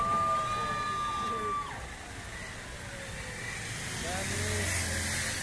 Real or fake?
real